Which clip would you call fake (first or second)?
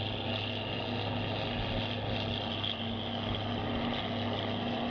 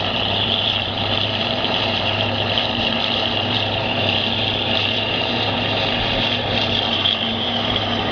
second